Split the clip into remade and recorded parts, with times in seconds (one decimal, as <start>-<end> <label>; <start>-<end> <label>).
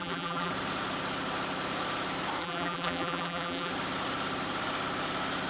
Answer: 0.0-0.5 remade; 0.5-2.4 recorded; 2.4-3.7 remade; 3.7-5.5 recorded